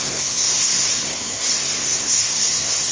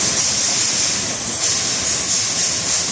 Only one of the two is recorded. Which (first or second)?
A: second